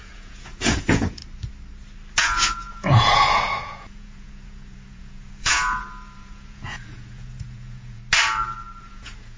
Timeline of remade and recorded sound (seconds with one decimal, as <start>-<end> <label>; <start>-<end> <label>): 0.0-1.2 remade; 1.2-2.2 recorded; 2.2-8.0 remade; 8.0-8.8 recorded; 8.8-9.4 remade